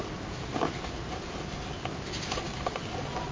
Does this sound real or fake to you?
real